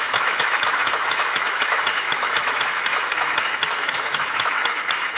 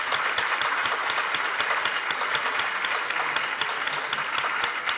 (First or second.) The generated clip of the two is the first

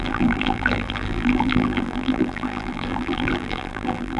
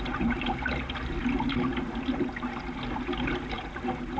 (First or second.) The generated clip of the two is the first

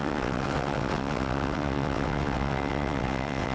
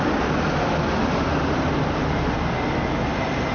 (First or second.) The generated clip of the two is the first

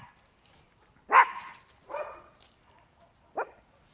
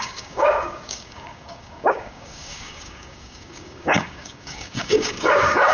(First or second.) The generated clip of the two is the second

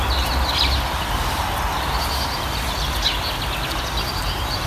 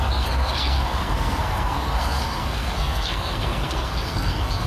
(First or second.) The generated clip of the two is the second